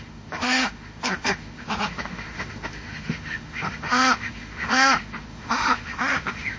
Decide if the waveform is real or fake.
fake